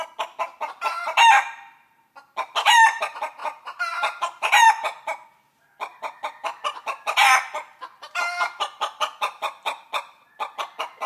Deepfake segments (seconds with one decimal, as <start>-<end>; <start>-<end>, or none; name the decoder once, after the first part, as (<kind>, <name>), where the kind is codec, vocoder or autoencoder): 3.4-4.7 (vocoder, BigVGAN v2); 5.9-6.7